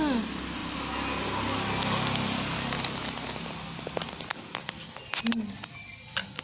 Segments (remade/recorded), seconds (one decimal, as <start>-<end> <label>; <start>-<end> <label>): 0.0-6.4 recorded